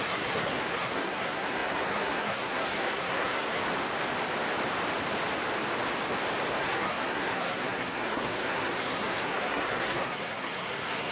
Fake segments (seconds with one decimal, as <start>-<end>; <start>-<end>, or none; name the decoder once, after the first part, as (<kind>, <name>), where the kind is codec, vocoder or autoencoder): 0.0-3.6 (codec, SNAC); 6.6-11.1